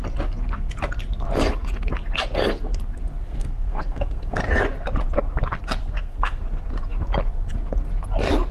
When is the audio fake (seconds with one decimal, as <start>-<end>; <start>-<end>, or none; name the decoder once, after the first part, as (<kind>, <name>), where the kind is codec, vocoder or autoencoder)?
3.2-4.4 (codec, SNAC); 5.8-6.4